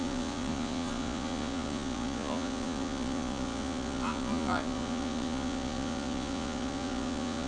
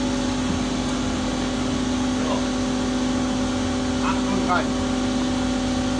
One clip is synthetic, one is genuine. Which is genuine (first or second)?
second